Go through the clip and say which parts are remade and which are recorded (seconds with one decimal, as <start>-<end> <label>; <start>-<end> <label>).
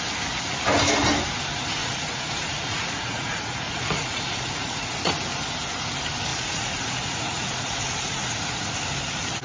0.0-1.8 recorded; 1.8-5.1 remade; 5.1-6.3 recorded; 6.3-8.7 remade; 8.7-9.4 recorded